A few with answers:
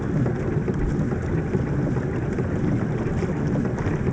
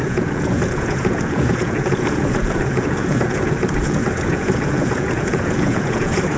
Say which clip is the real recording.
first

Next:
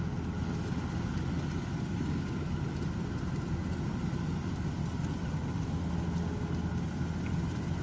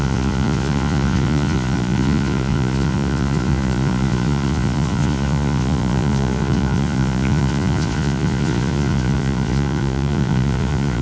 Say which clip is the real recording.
first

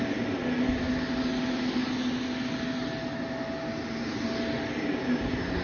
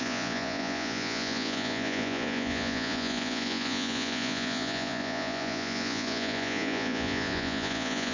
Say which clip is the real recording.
first